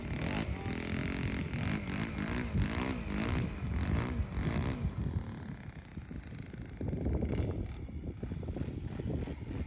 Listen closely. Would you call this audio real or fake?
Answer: real